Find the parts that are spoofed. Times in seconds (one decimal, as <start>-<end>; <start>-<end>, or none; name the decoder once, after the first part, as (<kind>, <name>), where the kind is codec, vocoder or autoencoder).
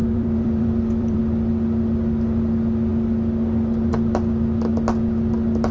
0.0-1.2 (vocoder, BigVGAN v2)